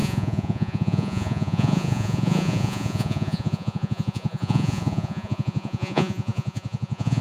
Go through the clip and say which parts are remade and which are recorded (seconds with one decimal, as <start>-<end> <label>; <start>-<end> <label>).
0.0-7.2 remade